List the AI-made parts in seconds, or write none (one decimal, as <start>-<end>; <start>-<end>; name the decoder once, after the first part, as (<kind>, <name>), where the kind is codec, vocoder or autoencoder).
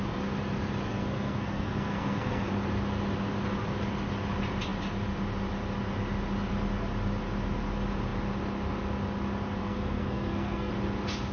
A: 0.9-2.5 (codec, SNAC); 9.6-10.7